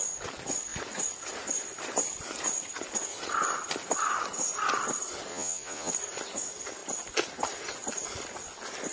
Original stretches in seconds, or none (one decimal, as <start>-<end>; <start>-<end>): 0.0-5.3; 5.9-8.9